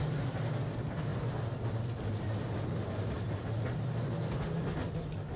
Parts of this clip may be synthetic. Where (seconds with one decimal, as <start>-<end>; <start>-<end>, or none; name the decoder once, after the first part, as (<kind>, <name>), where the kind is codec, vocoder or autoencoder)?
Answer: none